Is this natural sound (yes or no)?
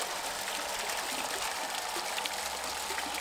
yes